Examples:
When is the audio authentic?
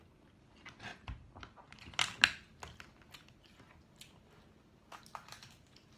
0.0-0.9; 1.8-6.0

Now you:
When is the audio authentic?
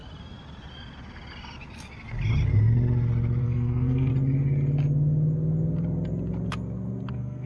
0.0-3.4; 4.1-7.1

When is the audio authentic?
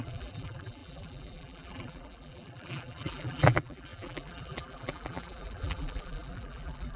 none